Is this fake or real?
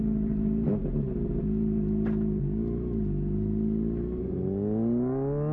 real